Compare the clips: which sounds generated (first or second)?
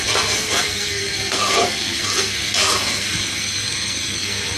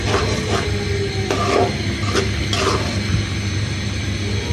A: first